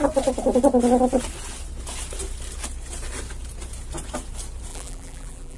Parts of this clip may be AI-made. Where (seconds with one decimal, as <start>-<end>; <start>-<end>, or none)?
4.7-5.6

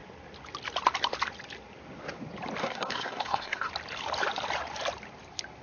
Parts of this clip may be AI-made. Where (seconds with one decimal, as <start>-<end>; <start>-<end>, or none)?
2.6-3.7

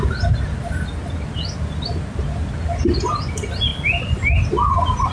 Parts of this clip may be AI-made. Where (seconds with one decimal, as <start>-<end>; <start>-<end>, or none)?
none